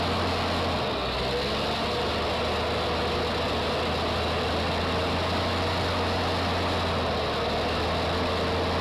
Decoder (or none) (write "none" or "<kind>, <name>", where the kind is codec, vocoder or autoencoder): none